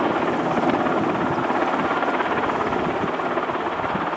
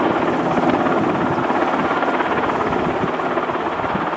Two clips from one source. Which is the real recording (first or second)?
second